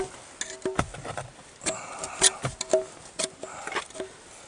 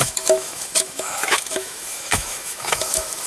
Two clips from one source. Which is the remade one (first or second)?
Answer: second